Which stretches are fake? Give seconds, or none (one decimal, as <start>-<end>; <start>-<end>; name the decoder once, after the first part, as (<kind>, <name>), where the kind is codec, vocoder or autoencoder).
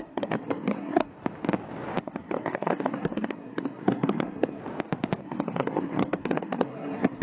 0.0-1.1 (codec, SNAC); 2.0-4.6; 5.2-7.2